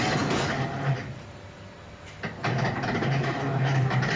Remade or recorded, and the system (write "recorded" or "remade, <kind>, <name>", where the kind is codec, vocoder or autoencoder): recorded